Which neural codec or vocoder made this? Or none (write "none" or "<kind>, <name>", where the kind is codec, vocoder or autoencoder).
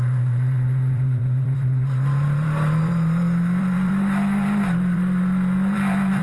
vocoder, BigVGAN v2